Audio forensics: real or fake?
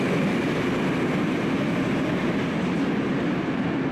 real